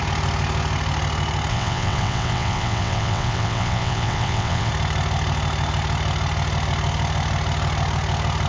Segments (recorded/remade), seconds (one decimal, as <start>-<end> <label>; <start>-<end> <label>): 0.0-1.5 recorded; 1.5-4.7 remade; 4.7-8.5 recorded